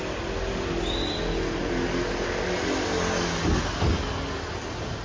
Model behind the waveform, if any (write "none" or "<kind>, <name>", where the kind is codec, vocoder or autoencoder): none